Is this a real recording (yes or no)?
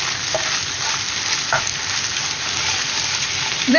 no